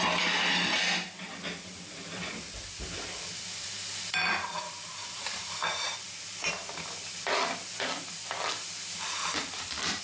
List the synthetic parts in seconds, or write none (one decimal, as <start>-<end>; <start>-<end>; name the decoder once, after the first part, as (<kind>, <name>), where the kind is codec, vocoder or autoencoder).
5.1-6.5 (vocoder, BigVGAN v2); 9.2-10.0